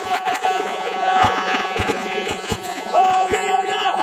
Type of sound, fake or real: fake